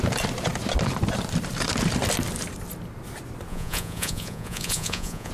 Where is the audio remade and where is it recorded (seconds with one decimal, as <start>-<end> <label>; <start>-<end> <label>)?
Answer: 0.0-3.5 recorded; 3.5-5.3 remade